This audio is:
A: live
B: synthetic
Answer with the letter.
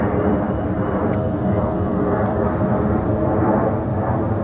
A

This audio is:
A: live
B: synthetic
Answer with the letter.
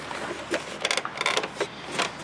A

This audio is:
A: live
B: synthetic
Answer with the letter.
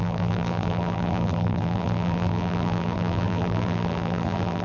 B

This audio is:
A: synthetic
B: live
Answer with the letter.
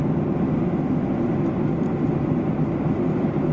B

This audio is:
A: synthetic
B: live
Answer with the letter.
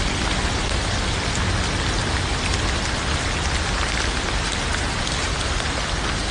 B